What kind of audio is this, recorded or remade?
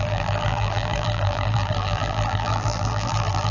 remade